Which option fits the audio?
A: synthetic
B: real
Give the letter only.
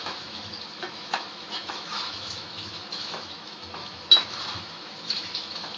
A